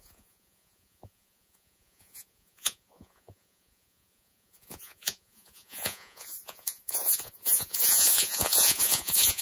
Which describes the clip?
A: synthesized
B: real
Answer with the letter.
A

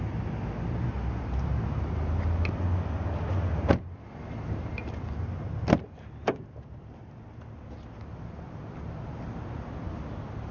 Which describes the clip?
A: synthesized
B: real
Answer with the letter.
B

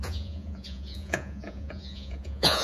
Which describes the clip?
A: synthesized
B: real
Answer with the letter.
A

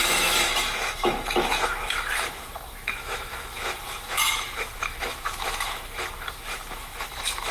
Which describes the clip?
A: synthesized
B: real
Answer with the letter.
A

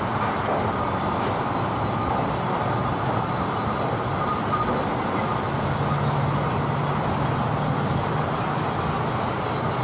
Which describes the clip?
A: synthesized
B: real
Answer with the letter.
B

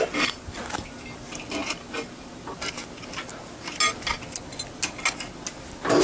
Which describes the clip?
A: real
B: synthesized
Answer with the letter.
A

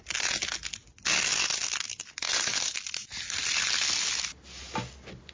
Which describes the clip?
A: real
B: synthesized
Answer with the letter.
A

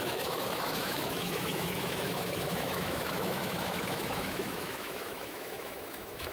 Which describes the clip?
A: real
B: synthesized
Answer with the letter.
B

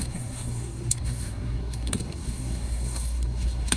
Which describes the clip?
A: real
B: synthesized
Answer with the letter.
B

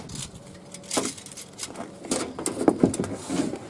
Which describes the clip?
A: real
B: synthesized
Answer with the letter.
A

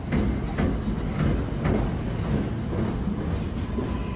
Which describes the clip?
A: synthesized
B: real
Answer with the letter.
B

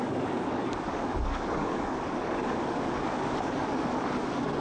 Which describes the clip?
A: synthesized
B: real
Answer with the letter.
A